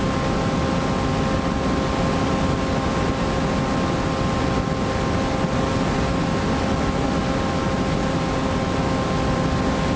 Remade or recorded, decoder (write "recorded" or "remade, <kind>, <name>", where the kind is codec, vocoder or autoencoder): recorded